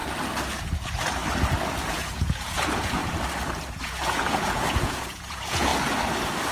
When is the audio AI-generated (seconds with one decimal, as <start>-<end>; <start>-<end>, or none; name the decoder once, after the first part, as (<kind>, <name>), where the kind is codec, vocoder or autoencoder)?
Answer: 0.6-1.2 (vocoder, Vocos); 1.9-3.0; 3.6-5.7